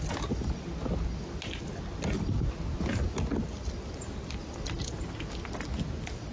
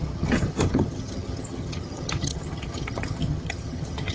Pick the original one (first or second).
first